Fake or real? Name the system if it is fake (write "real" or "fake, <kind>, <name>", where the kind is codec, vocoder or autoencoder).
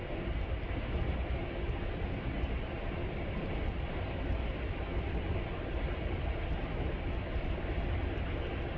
real